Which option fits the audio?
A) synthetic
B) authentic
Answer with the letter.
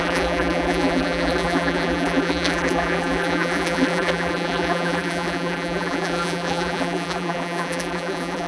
A